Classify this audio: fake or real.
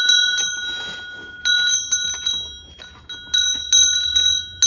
real